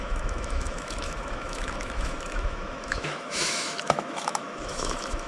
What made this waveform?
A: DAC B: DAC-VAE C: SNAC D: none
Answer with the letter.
B